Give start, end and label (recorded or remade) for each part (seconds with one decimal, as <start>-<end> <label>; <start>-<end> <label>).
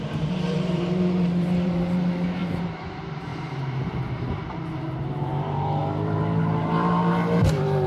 0.0-3.3 remade; 3.3-4.1 recorded; 4.1-7.9 remade